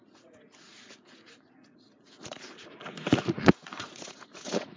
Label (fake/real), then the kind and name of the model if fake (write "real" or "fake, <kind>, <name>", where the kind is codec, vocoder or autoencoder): fake, vocoder, Vocos